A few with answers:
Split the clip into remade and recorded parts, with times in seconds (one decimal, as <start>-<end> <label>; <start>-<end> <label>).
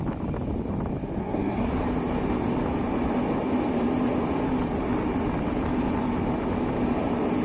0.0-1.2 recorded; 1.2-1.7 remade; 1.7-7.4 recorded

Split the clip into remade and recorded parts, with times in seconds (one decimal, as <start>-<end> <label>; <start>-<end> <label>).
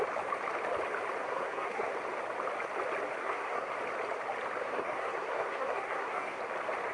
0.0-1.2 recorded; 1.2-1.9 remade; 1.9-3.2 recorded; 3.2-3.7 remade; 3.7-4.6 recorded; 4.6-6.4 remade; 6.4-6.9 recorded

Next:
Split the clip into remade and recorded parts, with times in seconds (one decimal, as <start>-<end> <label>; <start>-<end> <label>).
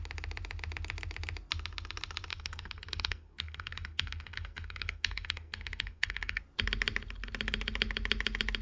0.0-2.3 recorded; 2.3-6.4 remade; 6.4-8.6 recorded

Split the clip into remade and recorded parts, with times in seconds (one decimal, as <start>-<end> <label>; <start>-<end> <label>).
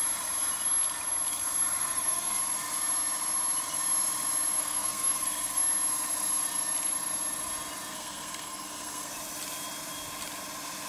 0.0-1.8 recorded; 1.8-2.4 remade; 2.4-4.6 recorded; 4.6-5.6 remade; 5.6-7.9 recorded; 7.9-9.1 remade; 9.1-10.9 recorded